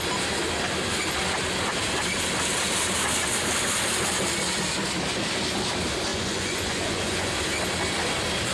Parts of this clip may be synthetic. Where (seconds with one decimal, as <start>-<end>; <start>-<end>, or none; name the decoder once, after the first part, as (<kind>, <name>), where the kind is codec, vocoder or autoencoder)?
6.1-7.3 (vocoder, Vocos)